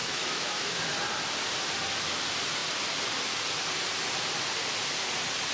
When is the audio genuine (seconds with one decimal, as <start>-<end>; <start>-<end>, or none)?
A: 0.8-5.5